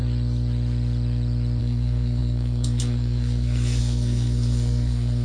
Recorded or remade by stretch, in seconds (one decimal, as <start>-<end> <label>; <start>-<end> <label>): 0.0-1.6 recorded; 1.6-5.2 remade